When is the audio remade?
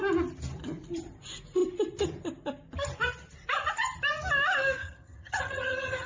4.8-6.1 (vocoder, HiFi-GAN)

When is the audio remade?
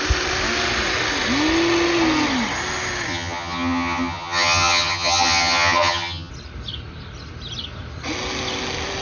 3.1-6.3 (vocoder, HiFi-GAN)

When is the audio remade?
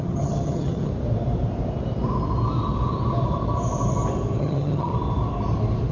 0.0-0.9 (vocoder, HiFi-GAN); 4.4-4.9